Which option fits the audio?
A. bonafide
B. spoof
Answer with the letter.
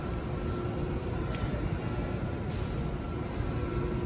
A